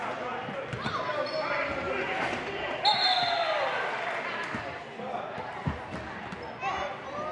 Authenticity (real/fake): real